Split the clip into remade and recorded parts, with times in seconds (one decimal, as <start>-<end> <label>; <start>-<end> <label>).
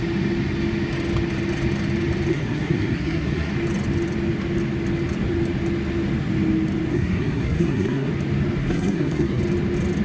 0.0-2.3 recorded; 2.3-3.5 remade; 3.5-6.9 recorded; 6.9-8.1 remade; 8.1-8.6 recorded; 8.6-9.4 remade; 9.4-10.0 recorded